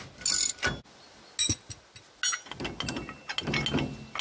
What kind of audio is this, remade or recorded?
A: recorded